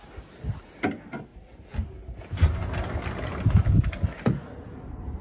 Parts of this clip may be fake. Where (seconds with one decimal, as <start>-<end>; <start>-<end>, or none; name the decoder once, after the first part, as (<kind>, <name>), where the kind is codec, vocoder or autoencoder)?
none